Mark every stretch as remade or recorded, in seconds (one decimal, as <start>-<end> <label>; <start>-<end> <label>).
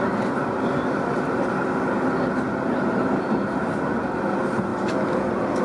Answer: 0.0-5.6 recorded